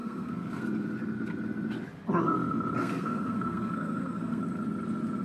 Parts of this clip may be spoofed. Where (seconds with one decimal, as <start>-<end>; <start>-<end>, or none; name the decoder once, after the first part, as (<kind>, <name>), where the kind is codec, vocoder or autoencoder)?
0.0-0.6 (codec, SNAC); 2.8-4.4